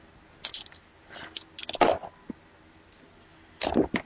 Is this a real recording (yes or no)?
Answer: yes